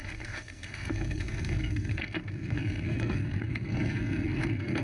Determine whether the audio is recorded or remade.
remade